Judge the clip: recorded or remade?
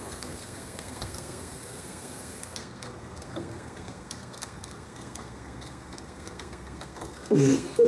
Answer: remade